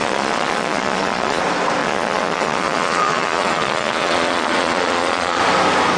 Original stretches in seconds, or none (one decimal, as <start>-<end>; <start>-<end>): 1.4-1.8; 5.4-6.0